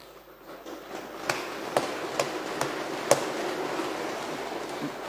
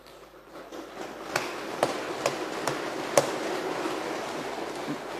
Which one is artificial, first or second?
second